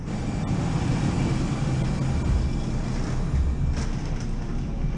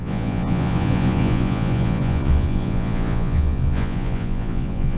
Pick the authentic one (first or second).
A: first